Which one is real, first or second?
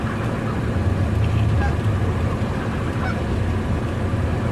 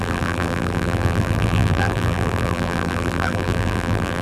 first